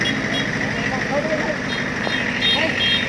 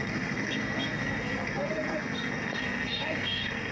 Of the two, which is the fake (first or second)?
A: second